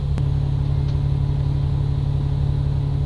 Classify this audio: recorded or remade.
recorded